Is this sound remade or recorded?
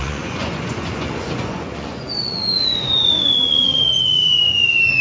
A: remade